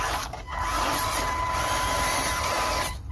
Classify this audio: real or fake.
real